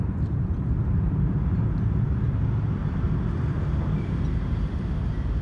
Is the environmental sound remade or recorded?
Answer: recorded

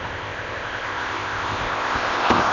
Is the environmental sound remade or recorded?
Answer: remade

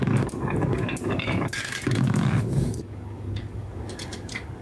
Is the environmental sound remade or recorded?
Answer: remade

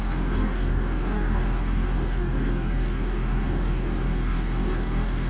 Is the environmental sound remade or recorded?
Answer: remade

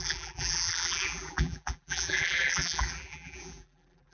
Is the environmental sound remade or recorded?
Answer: remade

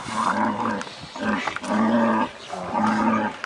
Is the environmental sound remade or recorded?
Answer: recorded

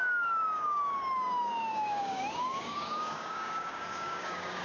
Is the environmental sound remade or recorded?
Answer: remade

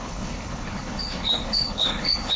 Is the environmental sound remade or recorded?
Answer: remade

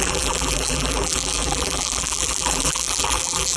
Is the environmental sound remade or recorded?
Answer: remade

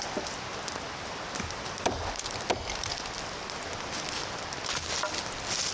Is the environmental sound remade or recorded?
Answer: recorded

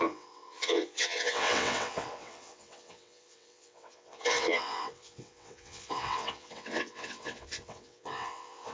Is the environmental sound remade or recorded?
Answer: remade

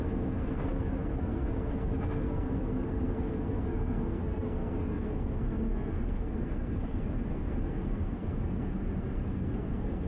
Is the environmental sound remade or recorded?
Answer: remade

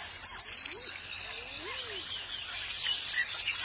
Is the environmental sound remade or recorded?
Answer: recorded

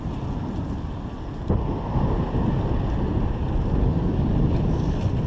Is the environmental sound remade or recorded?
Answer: recorded